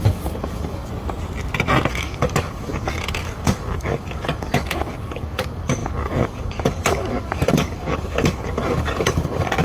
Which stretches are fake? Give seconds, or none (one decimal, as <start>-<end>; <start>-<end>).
0.0-0.9; 1.9-9.6